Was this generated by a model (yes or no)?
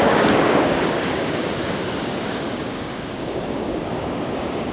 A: yes